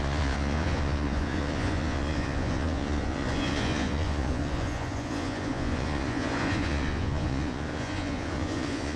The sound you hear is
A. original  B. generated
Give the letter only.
B